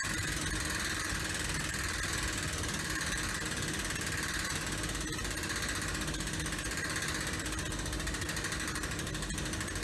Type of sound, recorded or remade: recorded